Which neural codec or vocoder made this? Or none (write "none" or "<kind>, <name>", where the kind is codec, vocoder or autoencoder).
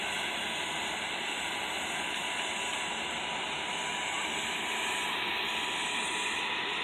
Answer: none